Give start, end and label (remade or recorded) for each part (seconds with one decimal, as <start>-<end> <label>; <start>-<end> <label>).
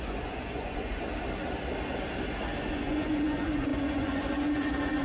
0.0-1.0 remade; 1.0-2.7 recorded; 2.7-5.0 remade